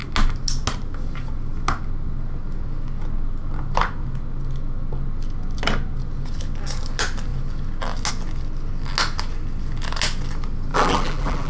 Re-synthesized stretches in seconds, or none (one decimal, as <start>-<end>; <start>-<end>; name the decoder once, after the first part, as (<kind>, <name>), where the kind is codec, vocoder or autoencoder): 10.7-11.5 (vocoder, BigVGAN v2)